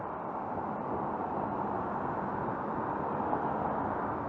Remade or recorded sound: recorded